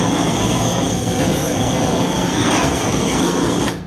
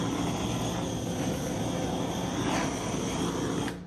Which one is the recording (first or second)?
second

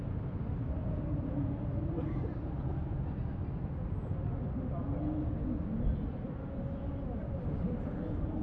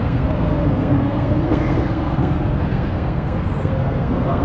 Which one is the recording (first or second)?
first